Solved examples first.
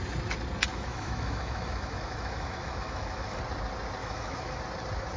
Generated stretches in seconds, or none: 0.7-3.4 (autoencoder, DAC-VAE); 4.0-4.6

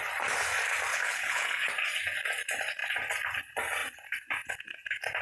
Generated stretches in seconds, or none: 0.9-1.7 (codec, HILCodec)